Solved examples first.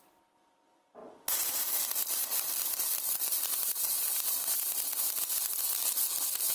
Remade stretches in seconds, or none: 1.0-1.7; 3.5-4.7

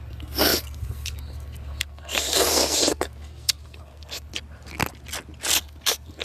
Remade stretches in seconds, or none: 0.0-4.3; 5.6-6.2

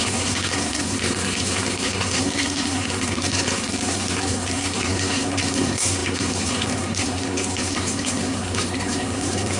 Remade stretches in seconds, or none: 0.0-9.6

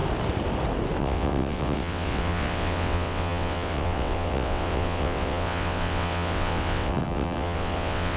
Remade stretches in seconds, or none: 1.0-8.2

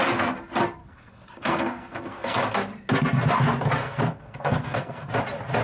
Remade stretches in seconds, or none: 0.8-2.4; 3.8-5.1